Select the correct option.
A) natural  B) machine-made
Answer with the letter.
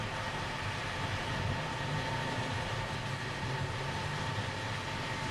A